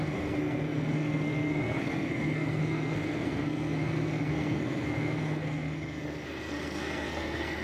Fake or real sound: fake